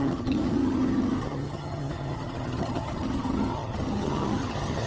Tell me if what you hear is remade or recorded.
remade